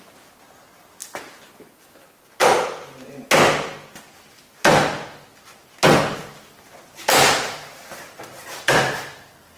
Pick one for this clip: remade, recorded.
recorded